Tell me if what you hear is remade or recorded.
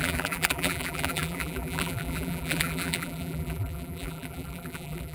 remade